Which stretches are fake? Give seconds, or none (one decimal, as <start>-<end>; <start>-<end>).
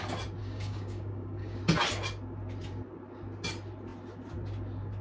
0.4-1.6